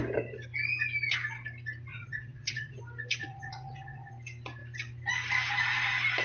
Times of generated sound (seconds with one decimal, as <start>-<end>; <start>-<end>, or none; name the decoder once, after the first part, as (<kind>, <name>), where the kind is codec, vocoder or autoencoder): 1.9-2.8 (vocoder, Vocos); 3.2-4.1